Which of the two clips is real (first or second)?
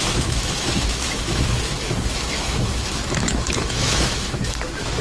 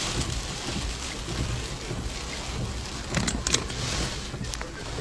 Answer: second